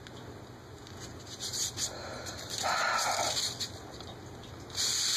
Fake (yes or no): no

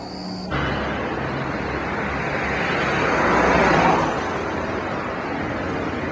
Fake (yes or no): no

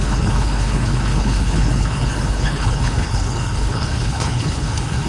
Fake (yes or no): yes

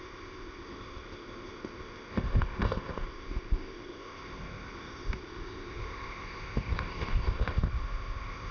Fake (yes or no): yes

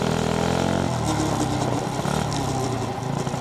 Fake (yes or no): no